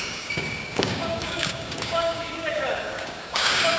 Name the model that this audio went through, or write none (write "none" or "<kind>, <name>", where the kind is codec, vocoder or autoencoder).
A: codec, DAC